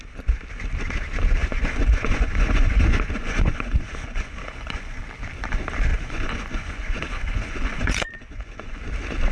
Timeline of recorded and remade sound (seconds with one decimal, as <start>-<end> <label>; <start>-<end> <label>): 0.0-1.4 recorded; 1.4-5.0 remade; 5.0-5.9 recorded; 5.9-8.8 remade; 8.8-9.3 recorded